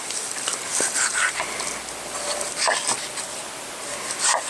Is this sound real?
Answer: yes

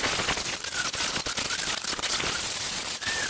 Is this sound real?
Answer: yes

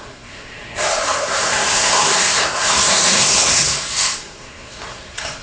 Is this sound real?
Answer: no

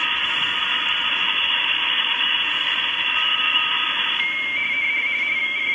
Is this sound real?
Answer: no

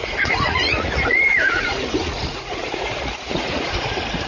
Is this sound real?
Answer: no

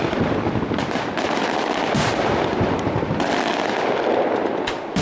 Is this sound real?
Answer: yes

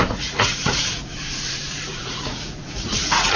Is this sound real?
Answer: no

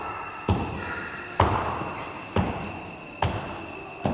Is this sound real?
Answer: yes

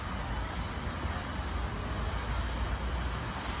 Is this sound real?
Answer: yes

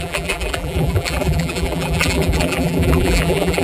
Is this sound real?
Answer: no